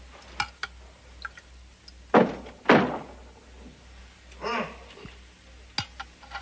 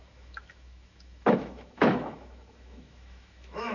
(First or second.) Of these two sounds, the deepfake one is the second